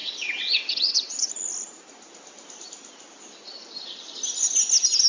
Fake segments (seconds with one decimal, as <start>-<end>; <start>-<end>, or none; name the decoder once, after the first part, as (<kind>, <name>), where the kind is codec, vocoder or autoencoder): 0.0-1.3 (vocoder, WaveNeXt)